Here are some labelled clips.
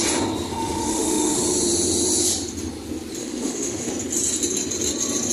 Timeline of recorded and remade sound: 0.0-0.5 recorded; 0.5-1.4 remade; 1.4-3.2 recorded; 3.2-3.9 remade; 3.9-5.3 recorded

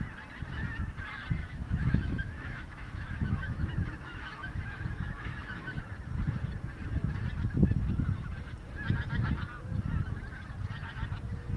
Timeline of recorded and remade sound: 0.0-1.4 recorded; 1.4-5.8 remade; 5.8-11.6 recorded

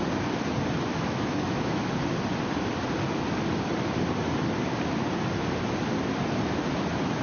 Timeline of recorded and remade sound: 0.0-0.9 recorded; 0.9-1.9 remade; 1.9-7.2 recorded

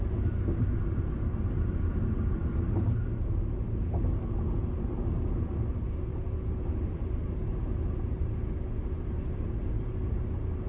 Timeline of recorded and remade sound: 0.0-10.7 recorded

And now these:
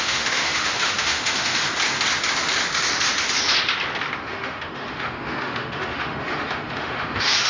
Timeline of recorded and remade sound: 0.0-1.5 remade; 1.5-4.2 recorded; 4.2-7.5 remade

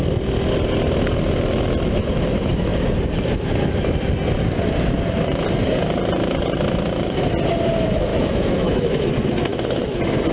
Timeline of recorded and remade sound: 0.0-8.1 recorded; 8.1-9.1 remade; 9.1-10.3 recorded